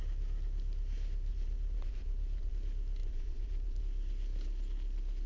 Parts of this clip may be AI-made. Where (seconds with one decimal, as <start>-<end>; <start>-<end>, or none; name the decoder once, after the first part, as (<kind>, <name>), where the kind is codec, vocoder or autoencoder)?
1.3-2.5 (vocoder, BigVGAN v2); 3.0-3.8